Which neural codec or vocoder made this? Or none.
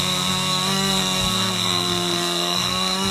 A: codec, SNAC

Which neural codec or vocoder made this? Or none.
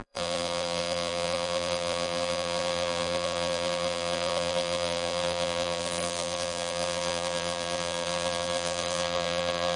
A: vocoder, BigVGAN v2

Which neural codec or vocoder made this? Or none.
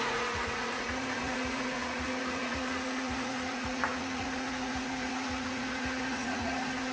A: vocoder, Vocos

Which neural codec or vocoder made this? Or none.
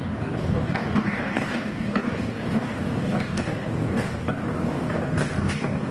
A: codec, DAC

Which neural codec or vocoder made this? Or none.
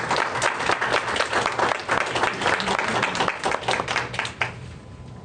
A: none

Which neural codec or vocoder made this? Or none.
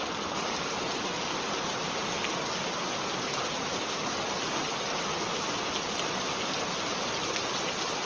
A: none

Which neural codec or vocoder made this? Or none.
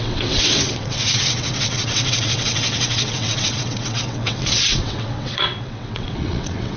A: vocoder, WaveNeXt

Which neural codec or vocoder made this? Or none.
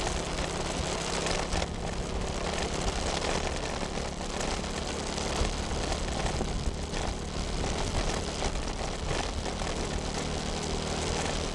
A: none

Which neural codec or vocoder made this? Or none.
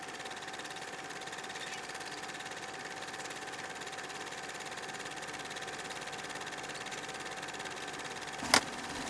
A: none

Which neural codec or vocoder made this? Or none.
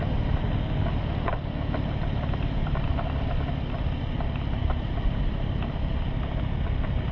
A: none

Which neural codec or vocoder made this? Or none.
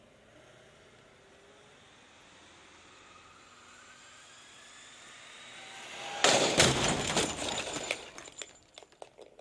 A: none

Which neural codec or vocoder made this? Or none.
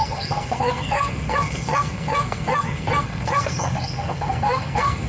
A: codec, SNAC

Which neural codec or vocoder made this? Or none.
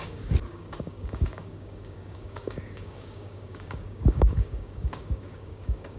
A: codec, DAC